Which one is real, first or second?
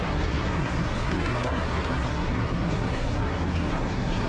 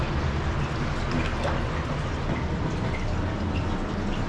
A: second